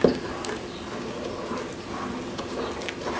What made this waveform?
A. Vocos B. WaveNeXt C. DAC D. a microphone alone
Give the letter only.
D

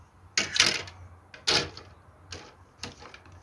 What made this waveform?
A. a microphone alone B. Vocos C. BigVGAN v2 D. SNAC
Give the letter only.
A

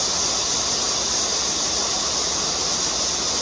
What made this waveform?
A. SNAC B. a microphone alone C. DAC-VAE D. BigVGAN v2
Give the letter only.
B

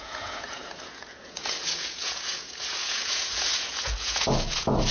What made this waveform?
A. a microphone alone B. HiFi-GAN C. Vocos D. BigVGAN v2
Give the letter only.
C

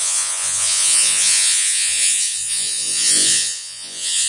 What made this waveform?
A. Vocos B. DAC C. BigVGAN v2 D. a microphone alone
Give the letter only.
A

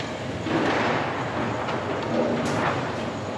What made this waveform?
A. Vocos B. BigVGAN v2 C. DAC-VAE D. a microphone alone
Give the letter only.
D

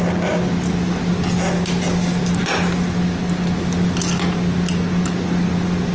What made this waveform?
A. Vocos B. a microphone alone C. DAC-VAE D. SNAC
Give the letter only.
B